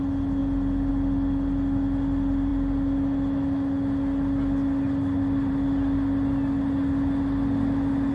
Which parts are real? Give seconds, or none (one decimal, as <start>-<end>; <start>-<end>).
0.0-8.1